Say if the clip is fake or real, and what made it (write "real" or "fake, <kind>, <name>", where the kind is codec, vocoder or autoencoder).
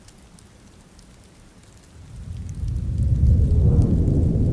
real